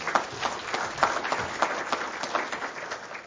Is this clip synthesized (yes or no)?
no